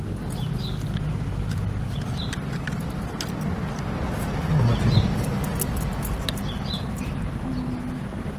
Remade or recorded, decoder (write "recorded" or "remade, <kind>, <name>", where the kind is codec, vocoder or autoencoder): recorded